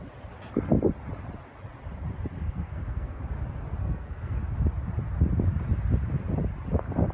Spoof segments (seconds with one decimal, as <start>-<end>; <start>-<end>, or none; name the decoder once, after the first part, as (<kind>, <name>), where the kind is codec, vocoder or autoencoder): 2.4-3.2 (codec, SNAC); 3.8-4.4